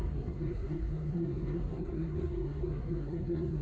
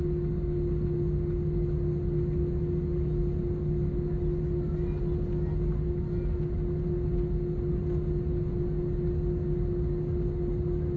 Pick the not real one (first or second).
first